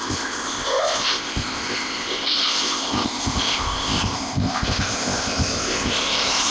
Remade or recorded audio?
remade